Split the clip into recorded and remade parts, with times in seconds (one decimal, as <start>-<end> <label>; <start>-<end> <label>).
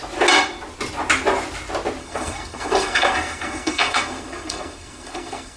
0.0-2.0 recorded; 2.0-5.6 remade